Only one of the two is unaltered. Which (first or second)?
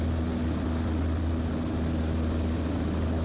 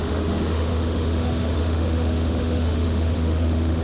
first